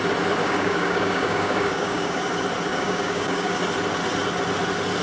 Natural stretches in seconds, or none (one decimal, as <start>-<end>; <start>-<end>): 0.0-0.4; 2.3-2.7; 3.6-5.0